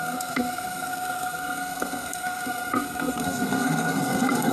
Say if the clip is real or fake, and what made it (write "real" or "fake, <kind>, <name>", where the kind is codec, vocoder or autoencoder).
fake, codec, SNAC